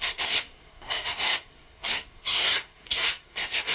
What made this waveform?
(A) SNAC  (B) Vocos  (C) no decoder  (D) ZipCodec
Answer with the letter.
A